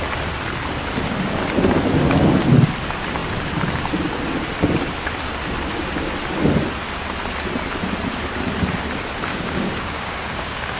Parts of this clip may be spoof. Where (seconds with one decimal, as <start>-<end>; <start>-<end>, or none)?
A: 9.3-10.8